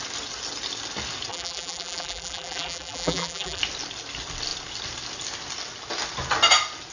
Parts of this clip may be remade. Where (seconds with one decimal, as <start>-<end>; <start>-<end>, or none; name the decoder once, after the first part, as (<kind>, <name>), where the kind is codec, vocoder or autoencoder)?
1.3-3.6 (vocoder, BigVGAN v2)